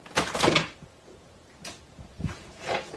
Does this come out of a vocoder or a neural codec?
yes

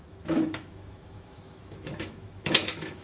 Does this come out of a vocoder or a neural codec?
yes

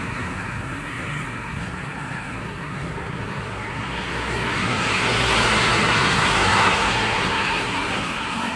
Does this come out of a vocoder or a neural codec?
yes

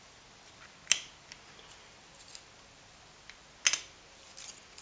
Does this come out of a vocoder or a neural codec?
no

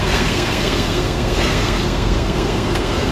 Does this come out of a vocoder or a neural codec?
yes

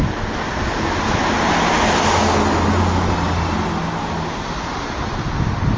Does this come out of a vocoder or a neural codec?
no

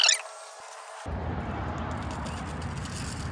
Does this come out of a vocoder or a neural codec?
no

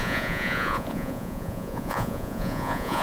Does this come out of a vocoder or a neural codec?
yes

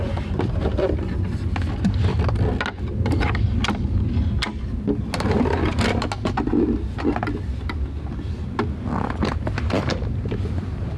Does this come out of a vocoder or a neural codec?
no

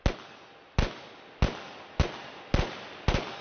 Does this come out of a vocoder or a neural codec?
no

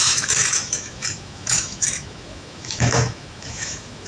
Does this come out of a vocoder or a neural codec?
yes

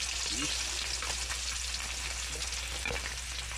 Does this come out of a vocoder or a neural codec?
no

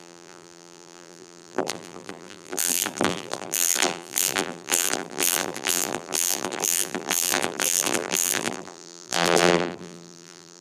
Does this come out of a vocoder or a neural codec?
yes